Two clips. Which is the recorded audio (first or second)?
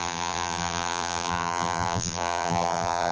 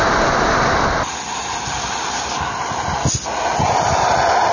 second